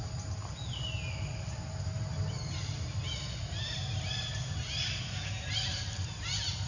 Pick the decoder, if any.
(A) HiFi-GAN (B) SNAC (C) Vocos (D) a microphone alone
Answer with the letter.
D